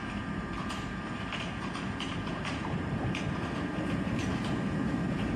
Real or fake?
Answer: fake